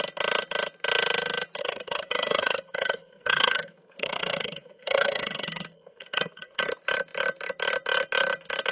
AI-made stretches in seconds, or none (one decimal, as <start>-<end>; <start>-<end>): 1.6-6.6